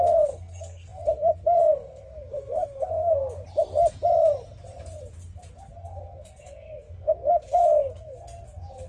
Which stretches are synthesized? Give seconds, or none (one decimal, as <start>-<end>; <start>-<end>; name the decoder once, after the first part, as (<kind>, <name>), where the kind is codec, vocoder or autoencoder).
0.0-3.2 (codec, SNAC); 5.8-8.9